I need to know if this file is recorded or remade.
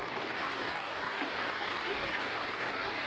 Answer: remade